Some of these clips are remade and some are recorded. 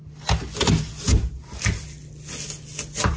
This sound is recorded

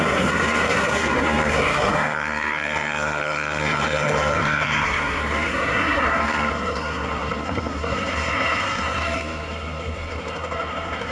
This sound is remade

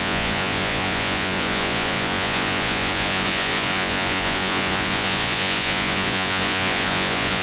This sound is remade